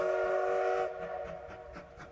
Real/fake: real